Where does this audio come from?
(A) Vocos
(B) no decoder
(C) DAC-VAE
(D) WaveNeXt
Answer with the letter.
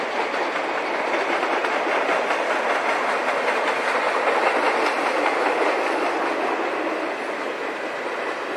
B